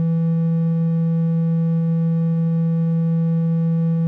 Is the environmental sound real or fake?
real